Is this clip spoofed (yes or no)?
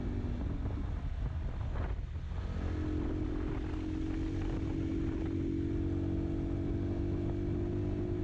no